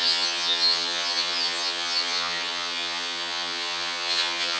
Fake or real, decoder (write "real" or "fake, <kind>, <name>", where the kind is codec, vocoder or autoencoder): fake, vocoder, HiFi-GAN